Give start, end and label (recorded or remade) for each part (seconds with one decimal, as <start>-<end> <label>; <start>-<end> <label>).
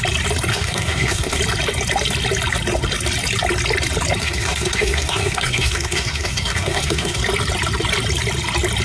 0.0-0.5 recorded; 0.5-1.4 remade; 1.4-4.2 recorded; 4.2-7.2 remade; 7.2-8.8 recorded